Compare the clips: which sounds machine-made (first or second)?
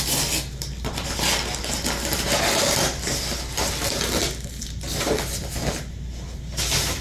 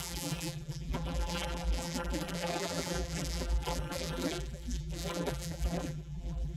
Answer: second